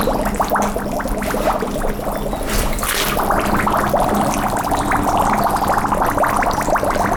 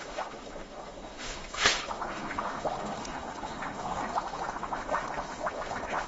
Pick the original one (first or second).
first